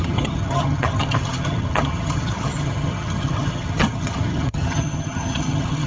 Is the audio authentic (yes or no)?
no